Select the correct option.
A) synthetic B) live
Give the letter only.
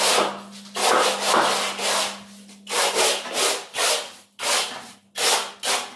B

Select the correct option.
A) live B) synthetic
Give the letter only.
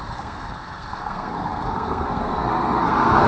B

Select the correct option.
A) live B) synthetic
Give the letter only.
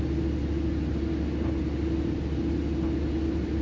A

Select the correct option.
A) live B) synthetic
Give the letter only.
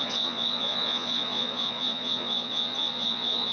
B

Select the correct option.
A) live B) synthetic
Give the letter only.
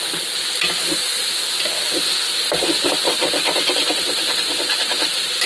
A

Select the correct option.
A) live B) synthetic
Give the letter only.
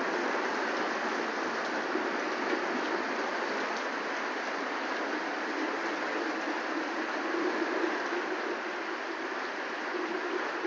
A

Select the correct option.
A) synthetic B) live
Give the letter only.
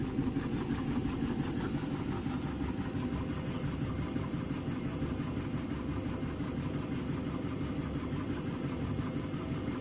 B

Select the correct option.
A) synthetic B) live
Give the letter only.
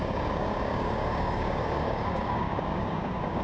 A